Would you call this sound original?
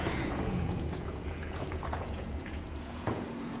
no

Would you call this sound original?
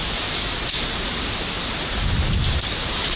no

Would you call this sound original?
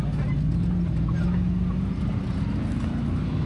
yes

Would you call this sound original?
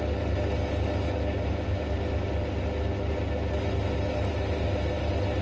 yes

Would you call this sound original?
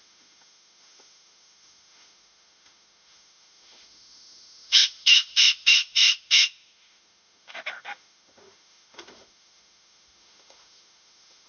no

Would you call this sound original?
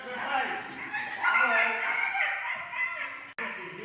yes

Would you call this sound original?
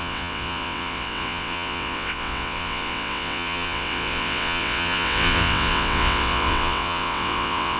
no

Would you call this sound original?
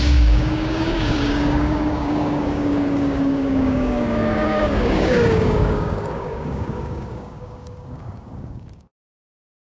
no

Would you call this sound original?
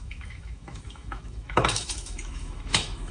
no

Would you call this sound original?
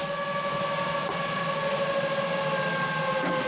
yes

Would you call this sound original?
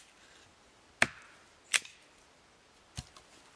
yes